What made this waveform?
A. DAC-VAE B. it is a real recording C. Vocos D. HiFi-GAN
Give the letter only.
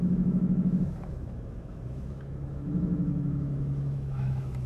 A